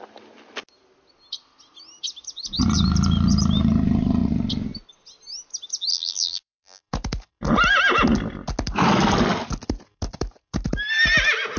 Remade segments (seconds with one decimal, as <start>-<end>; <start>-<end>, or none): 5.9-6.8